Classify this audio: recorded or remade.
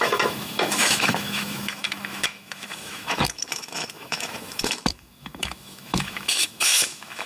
remade